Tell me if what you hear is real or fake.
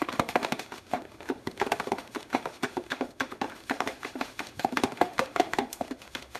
fake